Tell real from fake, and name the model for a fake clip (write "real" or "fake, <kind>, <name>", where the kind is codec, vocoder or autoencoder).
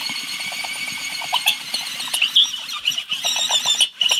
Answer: fake, vocoder, BigVGAN v2